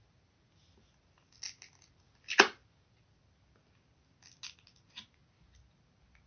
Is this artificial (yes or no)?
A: no